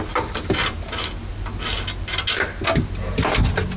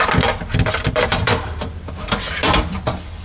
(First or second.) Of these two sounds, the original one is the first